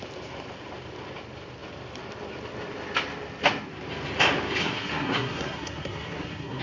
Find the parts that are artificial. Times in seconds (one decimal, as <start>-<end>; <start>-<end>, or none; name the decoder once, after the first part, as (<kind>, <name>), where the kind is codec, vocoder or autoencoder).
4.6-6.6 (codec, SNAC)